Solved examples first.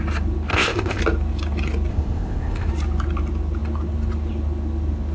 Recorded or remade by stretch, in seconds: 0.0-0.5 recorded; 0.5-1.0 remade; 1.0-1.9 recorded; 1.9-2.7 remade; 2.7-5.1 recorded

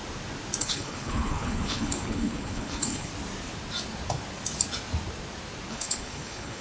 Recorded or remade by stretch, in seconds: 0.0-0.6 recorded; 0.6-3.1 remade; 3.1-5.7 recorded; 5.7-6.6 remade

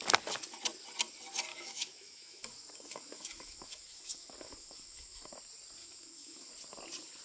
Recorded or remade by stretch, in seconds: 0.0-1.5 recorded; 1.5-5.3 remade; 5.3-5.8 recorded; 5.8-6.5 remade; 6.5-7.2 recorded

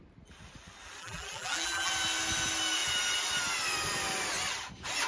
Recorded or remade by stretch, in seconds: 0.0-1.0 recorded; 1.0-1.9 remade; 1.9-5.1 recorded

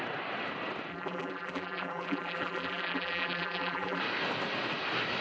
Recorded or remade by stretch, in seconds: 0.0-0.9 recorded; 0.9-4.0 remade; 4.0-5.2 recorded

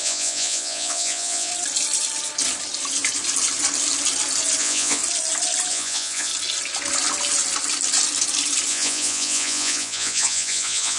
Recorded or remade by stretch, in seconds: 0.0-1.5 remade; 1.5-4.6 recorded; 4.6-5.0 remade; 5.0-5.7 recorded; 5.7-6.3 remade; 6.3-8.7 recorded; 8.7-11.0 remade

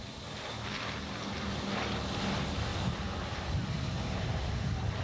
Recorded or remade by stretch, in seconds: 0.0-5.0 recorded

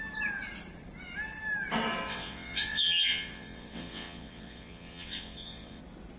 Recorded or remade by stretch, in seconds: 0.0-2.1 recorded; 2.1-5.8 remade; 5.8-6.2 recorded